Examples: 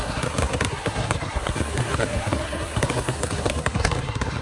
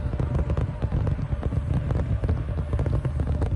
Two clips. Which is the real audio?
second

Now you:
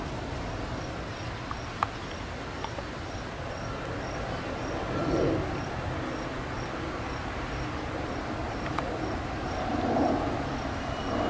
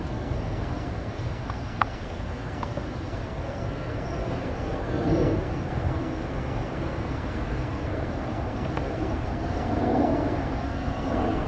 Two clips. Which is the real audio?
first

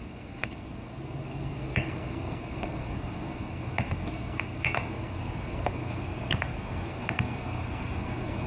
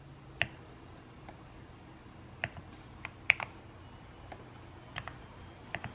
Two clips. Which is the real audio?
second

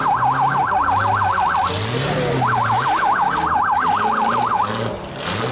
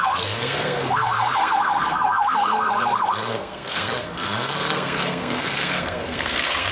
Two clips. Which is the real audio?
first